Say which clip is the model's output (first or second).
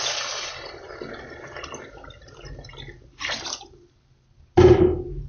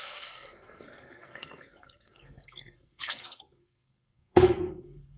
second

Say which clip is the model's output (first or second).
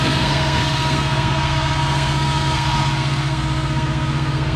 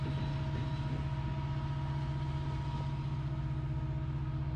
first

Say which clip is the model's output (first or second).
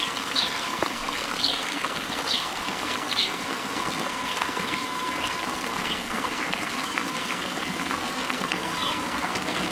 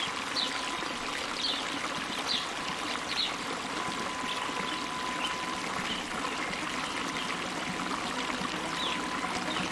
first